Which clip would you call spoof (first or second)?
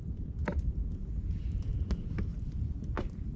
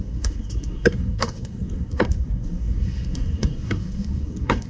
second